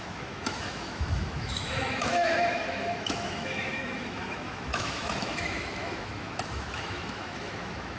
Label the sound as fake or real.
fake